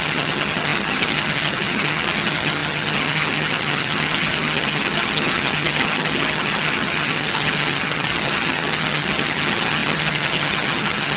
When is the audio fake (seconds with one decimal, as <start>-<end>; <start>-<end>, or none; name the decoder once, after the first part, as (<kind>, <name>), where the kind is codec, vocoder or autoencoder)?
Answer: 0.0-11.2 (vocoder, HiFi-GAN)